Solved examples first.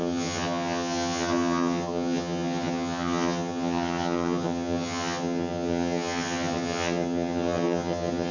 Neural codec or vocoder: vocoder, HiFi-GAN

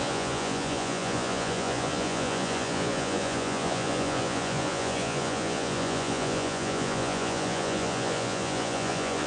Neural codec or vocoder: vocoder, Vocos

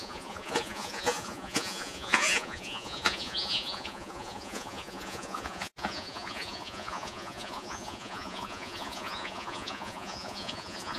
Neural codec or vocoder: vocoder, Vocos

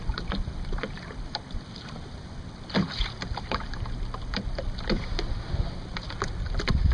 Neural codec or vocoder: none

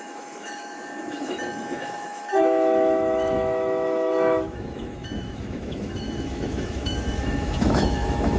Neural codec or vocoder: autoencoder, DAC-VAE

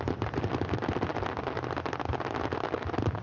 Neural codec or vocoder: none